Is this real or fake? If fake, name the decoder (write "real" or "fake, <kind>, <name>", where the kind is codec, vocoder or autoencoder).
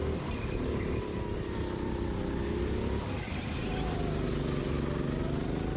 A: real